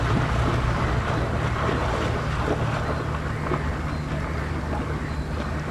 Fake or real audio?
real